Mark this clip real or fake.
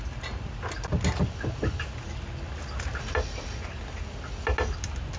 real